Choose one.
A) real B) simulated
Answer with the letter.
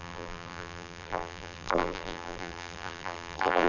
B